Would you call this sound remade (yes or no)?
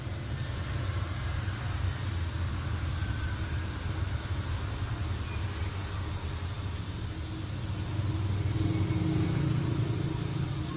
no